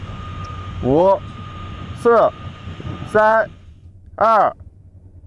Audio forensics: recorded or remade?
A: remade